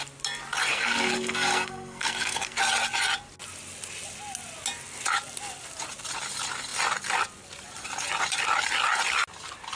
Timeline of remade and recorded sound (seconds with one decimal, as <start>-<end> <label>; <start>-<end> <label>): 0.0-0.7 recorded; 0.7-2.6 remade; 2.6-9.8 recorded